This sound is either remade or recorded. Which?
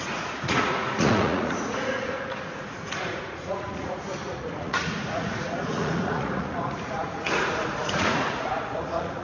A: remade